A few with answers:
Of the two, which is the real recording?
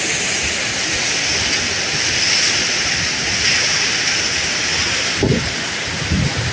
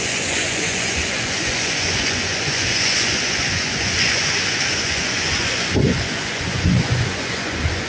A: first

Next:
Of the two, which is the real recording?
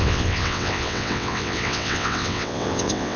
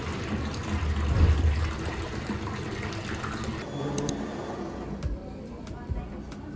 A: second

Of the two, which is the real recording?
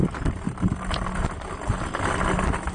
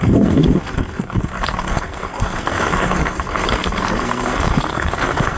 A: first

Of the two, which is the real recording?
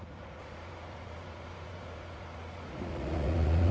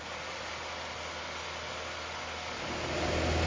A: second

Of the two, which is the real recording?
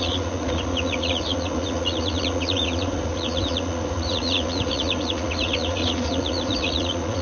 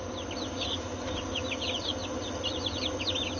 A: second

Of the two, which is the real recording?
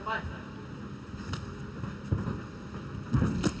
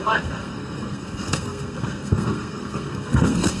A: first